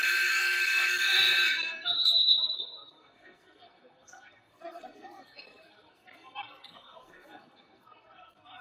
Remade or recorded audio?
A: remade